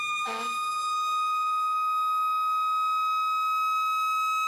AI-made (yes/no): no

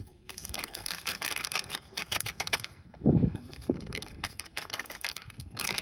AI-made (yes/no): yes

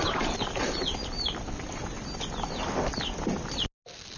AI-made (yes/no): no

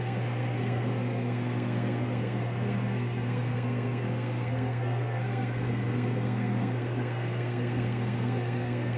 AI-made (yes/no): yes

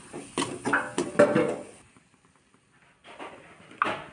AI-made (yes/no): no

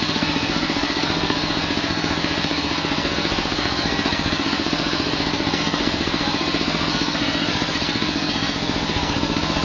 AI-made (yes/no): yes